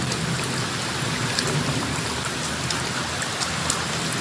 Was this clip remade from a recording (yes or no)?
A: no